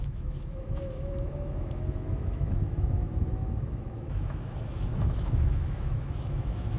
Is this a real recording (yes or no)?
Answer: no